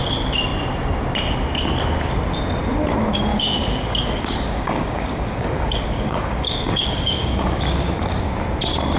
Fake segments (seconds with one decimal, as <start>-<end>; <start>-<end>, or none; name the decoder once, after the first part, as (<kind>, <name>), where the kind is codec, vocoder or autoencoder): 3.3-8.2 (codec, DAC)